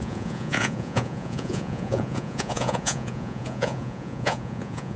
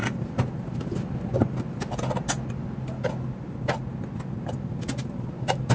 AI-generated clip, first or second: first